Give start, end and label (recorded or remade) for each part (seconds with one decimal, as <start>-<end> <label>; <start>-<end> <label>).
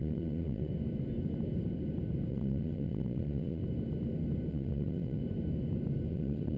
0.0-0.7 remade; 0.7-2.3 recorded; 2.3-3.6 remade; 3.6-4.5 recorded; 4.5-5.2 remade; 5.2-6.1 recorded; 6.1-6.6 remade